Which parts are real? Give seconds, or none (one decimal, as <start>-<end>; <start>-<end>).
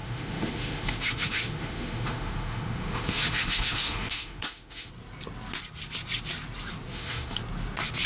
4.9-6.9; 7.4-8.1